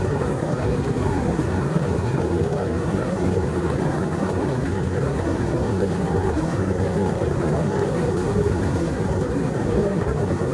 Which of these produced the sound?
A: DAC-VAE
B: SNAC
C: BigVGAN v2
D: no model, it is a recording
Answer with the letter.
B